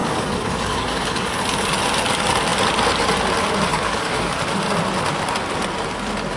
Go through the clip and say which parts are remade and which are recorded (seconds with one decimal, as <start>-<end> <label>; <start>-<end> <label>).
0.0-1.3 remade; 1.3-3.7 recorded; 3.7-4.4 remade; 4.4-6.4 recorded